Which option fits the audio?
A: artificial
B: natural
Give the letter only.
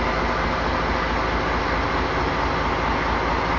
B